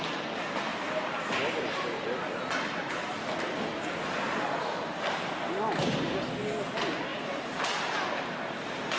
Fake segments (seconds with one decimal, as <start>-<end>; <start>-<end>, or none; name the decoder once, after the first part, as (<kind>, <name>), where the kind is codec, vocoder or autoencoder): none